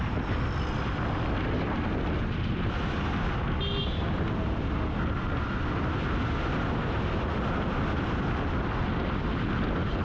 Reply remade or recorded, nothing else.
recorded